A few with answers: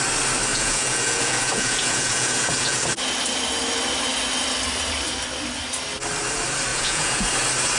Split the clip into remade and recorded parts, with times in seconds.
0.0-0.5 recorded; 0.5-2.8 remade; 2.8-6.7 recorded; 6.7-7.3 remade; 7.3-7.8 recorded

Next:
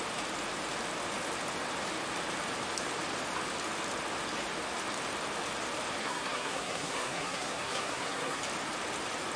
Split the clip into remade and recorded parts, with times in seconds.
0.0-6.0 recorded; 6.0-8.4 remade; 8.4-9.4 recorded

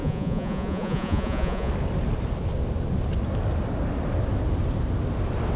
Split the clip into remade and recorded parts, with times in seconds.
0.0-1.7 remade; 1.7-5.6 recorded

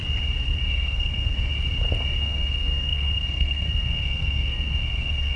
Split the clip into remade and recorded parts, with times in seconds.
0.0-0.7 recorded; 0.7-1.5 remade; 1.5-2.2 recorded; 2.2-5.4 remade

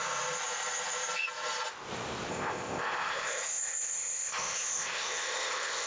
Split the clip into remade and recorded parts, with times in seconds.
0.0-2.3 recorded; 2.3-5.9 remade